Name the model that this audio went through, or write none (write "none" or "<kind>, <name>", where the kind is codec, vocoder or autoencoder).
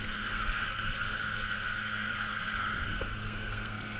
codec, SNAC